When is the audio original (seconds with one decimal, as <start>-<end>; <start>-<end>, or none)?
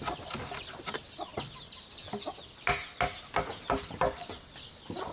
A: 0.0-5.1